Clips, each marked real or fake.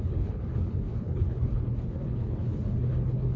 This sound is fake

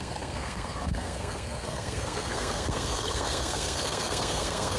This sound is fake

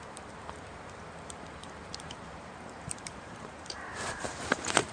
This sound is fake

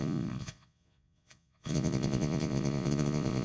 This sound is fake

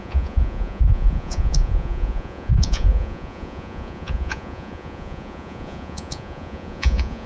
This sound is fake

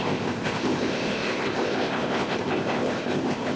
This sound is fake